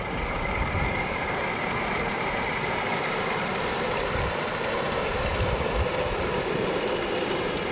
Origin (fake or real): fake